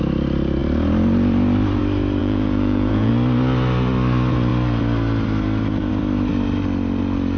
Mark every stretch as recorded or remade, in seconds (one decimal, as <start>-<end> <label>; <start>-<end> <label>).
0.0-2.2 recorded; 2.2-3.1 remade; 3.1-7.4 recorded